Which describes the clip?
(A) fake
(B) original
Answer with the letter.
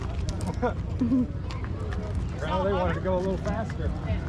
B